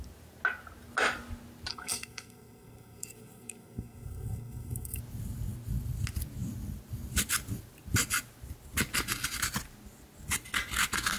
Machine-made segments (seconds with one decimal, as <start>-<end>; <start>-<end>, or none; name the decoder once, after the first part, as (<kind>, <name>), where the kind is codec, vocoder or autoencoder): 1.7-5.0 (codec, SNAC)